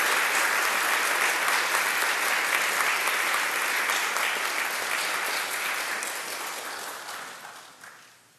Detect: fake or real real